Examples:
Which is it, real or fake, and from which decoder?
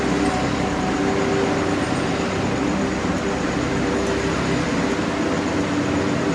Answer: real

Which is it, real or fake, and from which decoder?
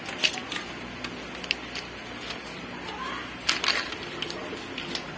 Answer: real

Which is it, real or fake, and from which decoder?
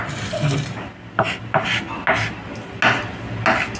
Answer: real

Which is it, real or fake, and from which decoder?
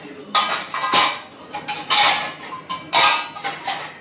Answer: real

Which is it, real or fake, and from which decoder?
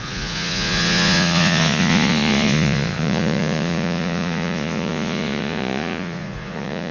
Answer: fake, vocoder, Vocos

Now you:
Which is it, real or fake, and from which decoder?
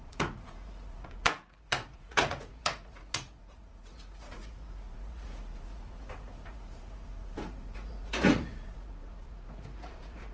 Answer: fake, vocoder, Vocos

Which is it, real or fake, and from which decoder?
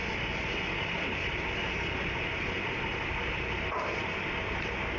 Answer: real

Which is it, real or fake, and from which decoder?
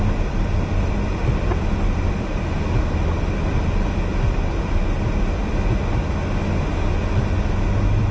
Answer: real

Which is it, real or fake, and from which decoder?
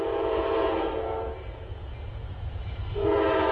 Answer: fake, vocoder, Vocos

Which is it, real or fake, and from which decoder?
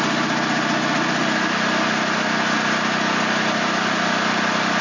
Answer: real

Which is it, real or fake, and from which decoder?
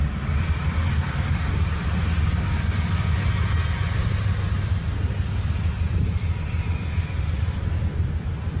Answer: real